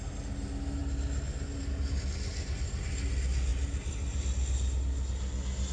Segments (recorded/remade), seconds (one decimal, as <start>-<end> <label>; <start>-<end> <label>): 0.0-5.7 recorded